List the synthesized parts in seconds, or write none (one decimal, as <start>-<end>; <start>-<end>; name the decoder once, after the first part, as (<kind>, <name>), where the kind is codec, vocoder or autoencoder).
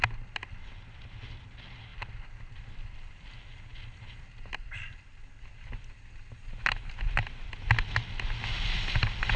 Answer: none